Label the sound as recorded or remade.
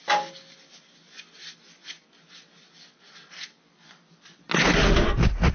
recorded